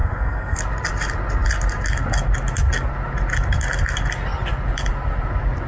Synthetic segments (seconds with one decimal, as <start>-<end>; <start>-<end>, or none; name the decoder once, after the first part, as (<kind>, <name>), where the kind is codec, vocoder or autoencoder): 0.0-0.6 (codec, SNAC)